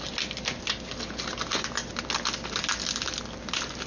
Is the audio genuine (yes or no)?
yes